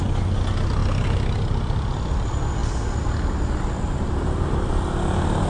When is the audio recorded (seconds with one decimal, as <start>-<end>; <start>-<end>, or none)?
0.0-5.5